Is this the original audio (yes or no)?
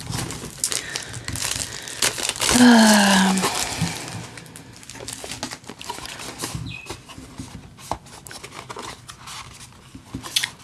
yes